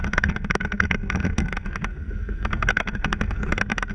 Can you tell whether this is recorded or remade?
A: remade